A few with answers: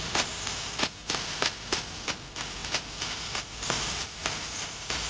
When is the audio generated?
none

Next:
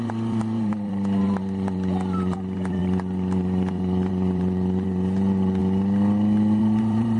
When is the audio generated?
0.0-5.6; 6.6-7.2

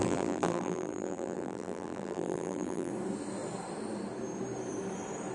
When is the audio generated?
0.0-2.9

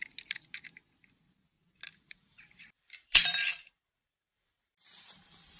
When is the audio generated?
1.9-5.6